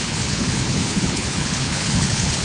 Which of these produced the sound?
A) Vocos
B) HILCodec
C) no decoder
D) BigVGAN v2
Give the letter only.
B